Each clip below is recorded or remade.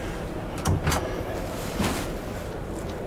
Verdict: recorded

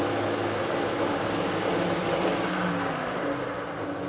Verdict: recorded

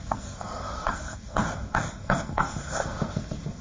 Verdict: remade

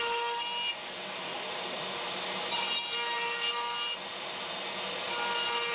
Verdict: recorded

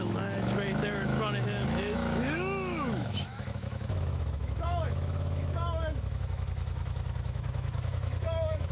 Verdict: remade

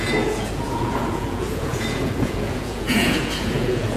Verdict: remade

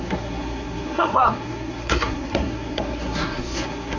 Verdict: remade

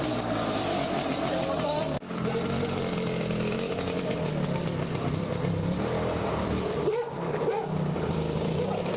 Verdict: remade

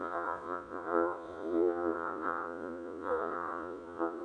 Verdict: remade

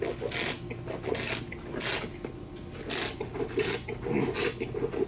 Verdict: recorded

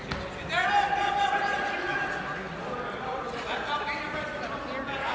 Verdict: recorded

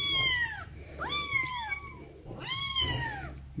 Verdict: recorded